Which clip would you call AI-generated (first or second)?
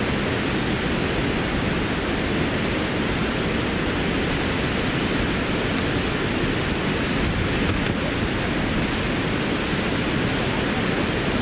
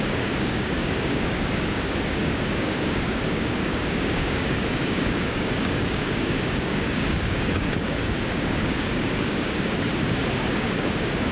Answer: second